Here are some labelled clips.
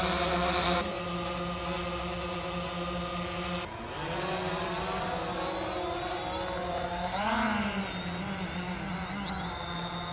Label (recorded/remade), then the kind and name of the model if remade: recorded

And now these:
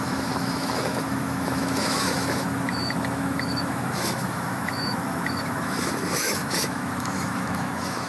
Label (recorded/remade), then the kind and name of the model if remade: remade, autoencoder, DAC-VAE